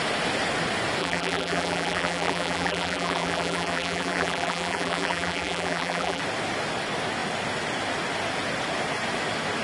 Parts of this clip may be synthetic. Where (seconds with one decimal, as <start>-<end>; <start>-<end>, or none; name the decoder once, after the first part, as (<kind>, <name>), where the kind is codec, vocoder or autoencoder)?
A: 1.0-6.2 (vocoder, BigVGAN v2)